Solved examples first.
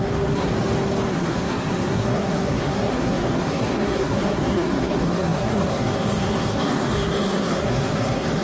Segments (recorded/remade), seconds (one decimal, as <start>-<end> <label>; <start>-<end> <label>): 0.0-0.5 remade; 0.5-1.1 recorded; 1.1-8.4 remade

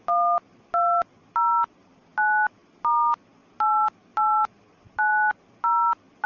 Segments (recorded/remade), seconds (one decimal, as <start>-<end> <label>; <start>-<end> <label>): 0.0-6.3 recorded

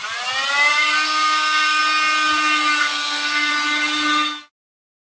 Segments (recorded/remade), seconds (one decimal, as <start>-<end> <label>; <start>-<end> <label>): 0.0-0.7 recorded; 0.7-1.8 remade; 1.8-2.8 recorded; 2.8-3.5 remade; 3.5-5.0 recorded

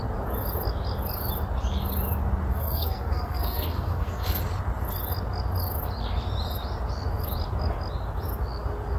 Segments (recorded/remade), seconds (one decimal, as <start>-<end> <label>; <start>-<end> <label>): 0.0-2.5 recorded; 2.5-4.4 remade; 4.4-9.0 recorded

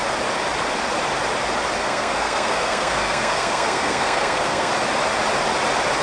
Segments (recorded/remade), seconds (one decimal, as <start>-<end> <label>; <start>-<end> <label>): 0.0-1.8 recorded; 1.8-4.7 remade; 4.7-6.0 recorded

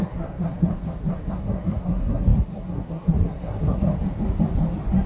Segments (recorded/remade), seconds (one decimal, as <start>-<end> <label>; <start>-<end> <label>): 0.0-0.7 remade; 0.7-1.3 recorded; 1.3-3.9 remade; 3.9-5.1 recorded

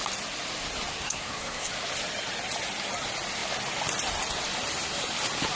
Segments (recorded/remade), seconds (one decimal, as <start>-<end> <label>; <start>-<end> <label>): 0.0-0.9 recorded; 0.9-1.7 remade; 1.7-5.6 recorded

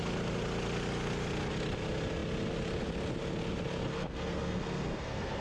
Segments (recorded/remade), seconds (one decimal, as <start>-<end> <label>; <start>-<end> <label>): 0.0-3.9 recorded; 3.9-5.4 remade